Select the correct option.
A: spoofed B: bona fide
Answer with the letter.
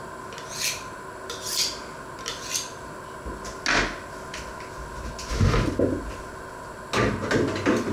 B